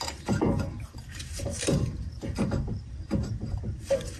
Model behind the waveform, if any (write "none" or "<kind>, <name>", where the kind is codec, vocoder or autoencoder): vocoder, BigVGAN v2